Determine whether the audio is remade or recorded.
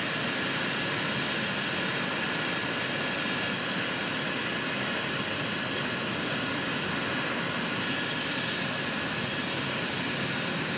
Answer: recorded